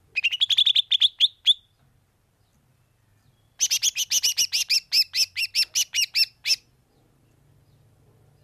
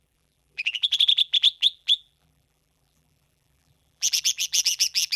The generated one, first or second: second